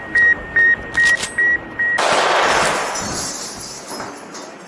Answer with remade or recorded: recorded